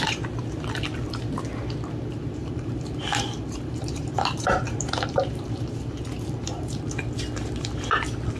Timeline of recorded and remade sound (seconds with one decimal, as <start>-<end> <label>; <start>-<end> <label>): 0.0-2.4 recorded; 2.4-6.7 remade; 6.7-8.4 recorded